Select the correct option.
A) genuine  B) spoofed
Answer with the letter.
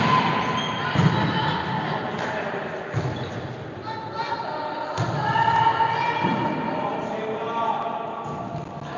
A